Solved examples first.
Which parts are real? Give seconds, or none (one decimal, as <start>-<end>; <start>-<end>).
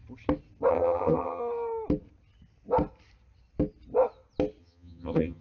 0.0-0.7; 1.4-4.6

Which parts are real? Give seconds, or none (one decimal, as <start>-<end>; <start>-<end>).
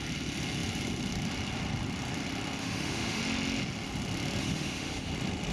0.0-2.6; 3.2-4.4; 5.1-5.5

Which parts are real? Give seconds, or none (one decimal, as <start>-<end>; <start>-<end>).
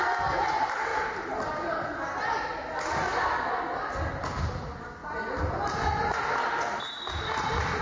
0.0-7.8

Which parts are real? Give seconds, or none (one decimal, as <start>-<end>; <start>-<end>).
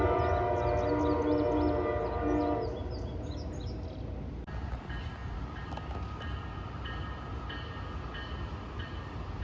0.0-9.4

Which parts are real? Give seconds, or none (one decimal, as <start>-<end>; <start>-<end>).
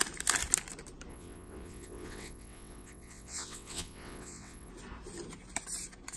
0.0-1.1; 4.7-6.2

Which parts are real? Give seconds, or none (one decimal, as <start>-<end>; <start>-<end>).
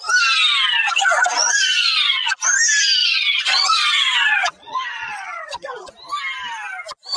0.0-0.8; 2.4-3.0; 5.9-7.2